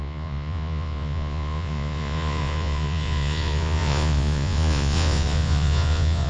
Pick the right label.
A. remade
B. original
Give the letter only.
A